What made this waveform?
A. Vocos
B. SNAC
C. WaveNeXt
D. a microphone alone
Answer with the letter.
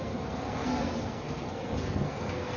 B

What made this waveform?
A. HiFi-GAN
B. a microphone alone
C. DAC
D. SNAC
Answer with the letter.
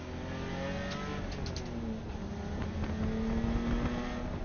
B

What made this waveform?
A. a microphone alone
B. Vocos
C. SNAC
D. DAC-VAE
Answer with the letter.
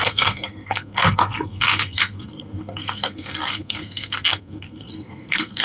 C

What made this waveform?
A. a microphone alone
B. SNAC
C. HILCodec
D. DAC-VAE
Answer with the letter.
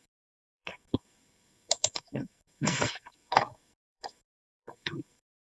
B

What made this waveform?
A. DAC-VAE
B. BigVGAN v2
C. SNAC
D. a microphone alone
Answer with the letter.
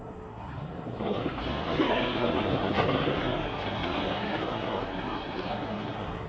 C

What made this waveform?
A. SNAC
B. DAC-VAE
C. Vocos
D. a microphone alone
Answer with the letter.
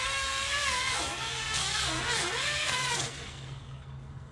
A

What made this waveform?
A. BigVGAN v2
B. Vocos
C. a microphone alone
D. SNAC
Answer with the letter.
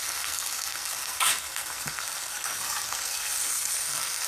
D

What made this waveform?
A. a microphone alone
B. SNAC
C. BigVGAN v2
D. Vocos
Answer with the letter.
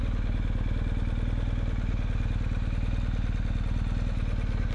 A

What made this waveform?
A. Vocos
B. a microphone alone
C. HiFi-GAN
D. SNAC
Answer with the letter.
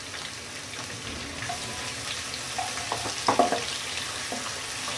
B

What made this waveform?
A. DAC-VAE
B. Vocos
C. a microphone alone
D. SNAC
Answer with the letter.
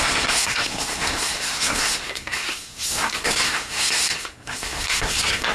D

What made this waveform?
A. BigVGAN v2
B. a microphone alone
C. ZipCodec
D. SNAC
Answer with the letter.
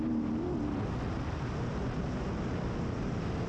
B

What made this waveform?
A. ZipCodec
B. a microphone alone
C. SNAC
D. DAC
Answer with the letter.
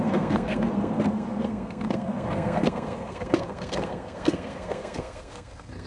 C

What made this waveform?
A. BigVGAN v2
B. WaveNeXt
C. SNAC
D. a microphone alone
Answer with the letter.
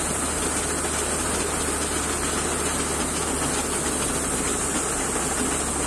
D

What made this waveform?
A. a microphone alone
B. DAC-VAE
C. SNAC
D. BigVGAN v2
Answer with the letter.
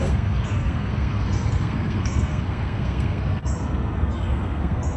C